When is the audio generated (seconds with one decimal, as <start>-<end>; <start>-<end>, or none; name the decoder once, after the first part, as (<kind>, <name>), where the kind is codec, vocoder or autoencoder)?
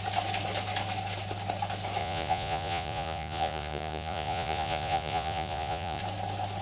2.0-6.0 (vocoder, Vocos)